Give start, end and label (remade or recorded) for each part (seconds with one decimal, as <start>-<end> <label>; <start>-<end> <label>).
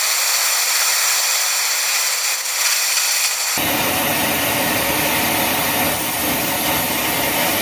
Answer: 0.0-0.4 recorded; 0.4-2.9 remade; 2.9-4.2 recorded; 4.2-5.7 remade; 5.7-7.6 recorded